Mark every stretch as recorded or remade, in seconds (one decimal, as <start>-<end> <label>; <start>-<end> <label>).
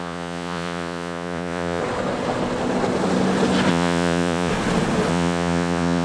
0.0-1.8 remade; 1.8-3.7 recorded; 3.7-4.5 remade; 4.5-5.1 recorded; 5.1-6.0 remade